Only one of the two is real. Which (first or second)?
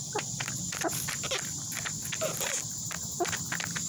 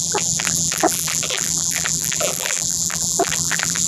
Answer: first